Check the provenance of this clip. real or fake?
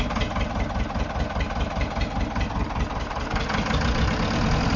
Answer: real